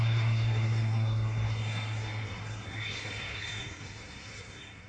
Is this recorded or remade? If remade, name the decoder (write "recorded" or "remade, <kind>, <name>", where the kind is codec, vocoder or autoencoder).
remade, codec, SNAC